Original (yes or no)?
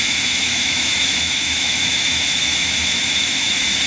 no